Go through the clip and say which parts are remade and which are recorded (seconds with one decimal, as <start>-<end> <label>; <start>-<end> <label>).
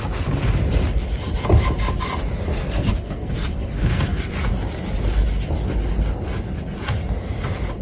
0.0-2.5 recorded; 2.5-4.3 remade; 4.3-7.8 recorded